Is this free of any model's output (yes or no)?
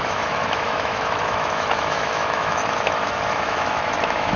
no